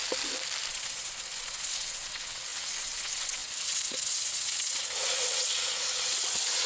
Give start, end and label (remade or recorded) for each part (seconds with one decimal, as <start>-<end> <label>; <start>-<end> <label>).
0.0-0.7 recorded; 0.7-6.7 remade